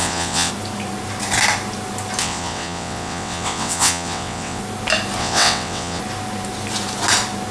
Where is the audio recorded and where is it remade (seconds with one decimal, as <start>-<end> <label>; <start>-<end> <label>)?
0.0-0.5 remade; 0.5-2.2 recorded; 2.2-4.6 remade; 4.6-5.2 recorded; 5.2-6.0 remade; 6.0-7.5 recorded

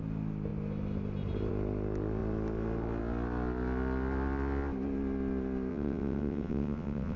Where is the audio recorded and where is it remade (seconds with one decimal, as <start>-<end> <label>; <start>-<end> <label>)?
0.0-5.7 recorded; 5.7-7.2 remade

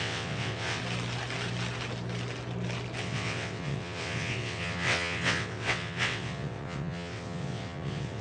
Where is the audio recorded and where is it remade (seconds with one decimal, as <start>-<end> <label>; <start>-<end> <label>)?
0.0-0.8 remade; 0.8-3.0 recorded; 3.0-8.2 remade

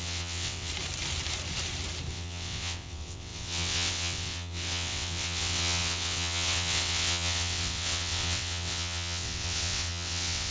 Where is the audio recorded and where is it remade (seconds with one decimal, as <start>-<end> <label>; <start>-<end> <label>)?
0.0-0.7 remade; 0.7-2.1 recorded; 2.1-10.5 remade

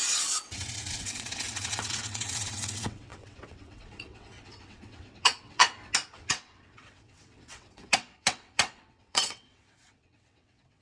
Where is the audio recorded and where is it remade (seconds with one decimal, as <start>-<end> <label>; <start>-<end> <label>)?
0.0-5.6 remade; 5.6-6.1 recorded; 6.1-10.8 remade